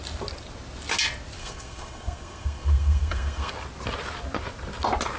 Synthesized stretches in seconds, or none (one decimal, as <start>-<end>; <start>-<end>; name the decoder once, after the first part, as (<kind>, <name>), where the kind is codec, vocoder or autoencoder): 1.4-3.5 (codec, SNAC)